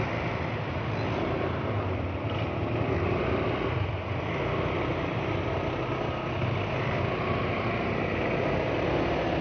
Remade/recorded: recorded